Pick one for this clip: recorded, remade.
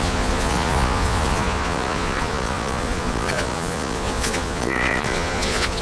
remade